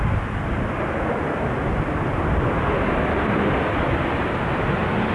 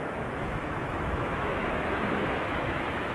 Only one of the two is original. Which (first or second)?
first